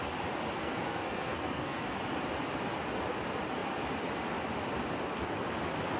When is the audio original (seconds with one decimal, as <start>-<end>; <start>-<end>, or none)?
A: 0.0-0.6; 1.8-6.0